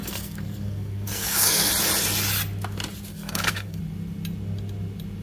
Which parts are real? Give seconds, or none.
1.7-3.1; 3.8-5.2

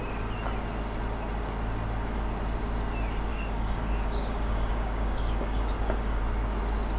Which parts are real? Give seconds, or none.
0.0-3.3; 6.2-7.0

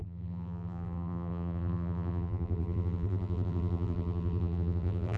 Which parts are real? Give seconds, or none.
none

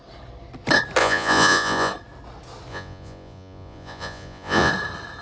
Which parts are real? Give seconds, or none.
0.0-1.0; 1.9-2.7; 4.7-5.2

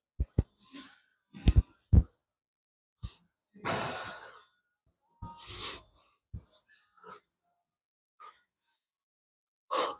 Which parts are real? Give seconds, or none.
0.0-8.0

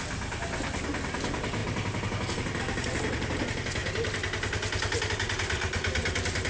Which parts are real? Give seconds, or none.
0.0-6.5

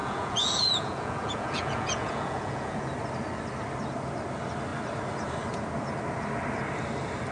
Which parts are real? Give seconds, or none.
2.8-7.3

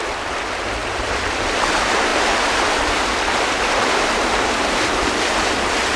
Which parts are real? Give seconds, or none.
0.0-0.8; 1.4-6.0